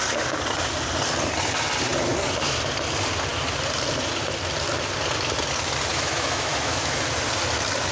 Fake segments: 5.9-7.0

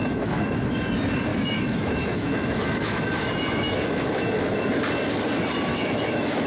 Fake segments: 0.0-0.8; 1.3-4.8; 5.7-6.5

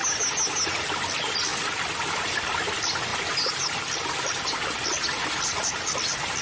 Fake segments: none

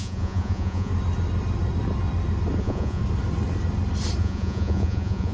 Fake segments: 0.0-0.9; 2.6-3.0; 4.2-5.3

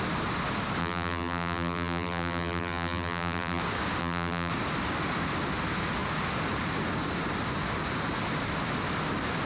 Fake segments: 0.8-3.6; 4.0-4.5

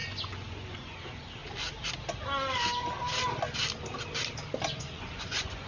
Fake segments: 0.0-1.4; 4.8-5.7

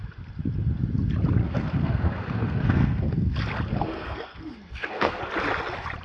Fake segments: 1.4-3.3; 3.7-5.2